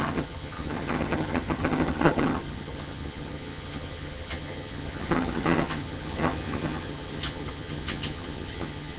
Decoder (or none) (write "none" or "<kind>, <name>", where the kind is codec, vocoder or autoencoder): vocoder, HiFi-GAN